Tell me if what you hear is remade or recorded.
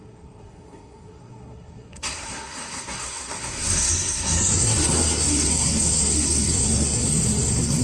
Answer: remade